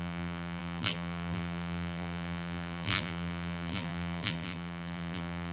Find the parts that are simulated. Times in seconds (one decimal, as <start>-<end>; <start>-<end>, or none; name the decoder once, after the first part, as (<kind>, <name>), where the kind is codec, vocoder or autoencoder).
0.0-5.5 (vocoder, BigVGAN v2)